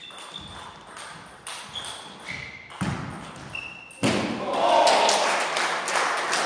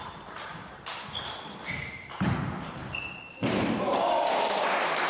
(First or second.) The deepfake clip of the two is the second